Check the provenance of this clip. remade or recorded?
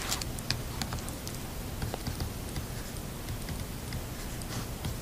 recorded